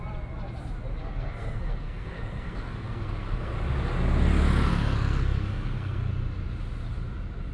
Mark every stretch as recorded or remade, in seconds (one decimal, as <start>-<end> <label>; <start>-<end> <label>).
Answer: 0.0-1.0 recorded; 1.0-3.6 remade; 3.6-4.7 recorded; 4.7-6.1 remade; 6.1-7.5 recorded